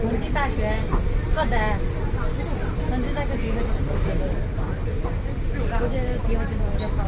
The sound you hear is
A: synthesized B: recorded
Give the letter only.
B